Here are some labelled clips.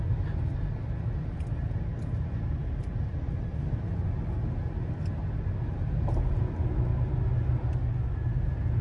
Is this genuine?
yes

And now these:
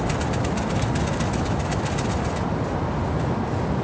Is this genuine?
yes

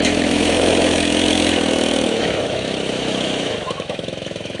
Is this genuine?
no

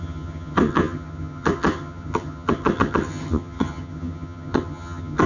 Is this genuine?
no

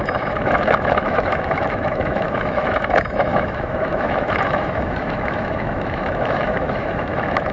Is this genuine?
no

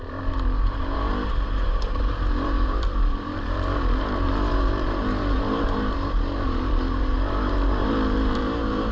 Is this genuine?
no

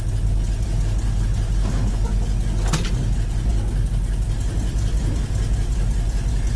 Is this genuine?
yes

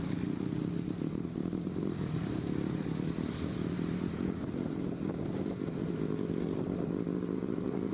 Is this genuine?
yes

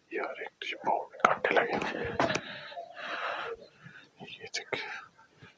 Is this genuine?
yes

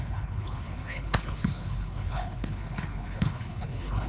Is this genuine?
no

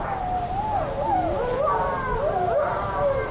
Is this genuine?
yes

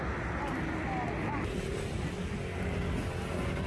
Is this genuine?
yes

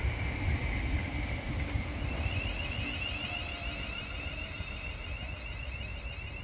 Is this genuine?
yes